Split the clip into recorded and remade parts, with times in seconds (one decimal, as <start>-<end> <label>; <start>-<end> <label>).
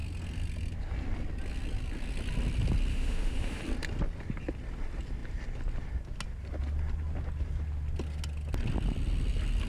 0.0-2.9 recorded; 2.9-3.6 remade; 3.6-9.7 recorded